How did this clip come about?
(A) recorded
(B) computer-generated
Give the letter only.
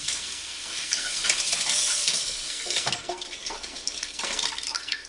B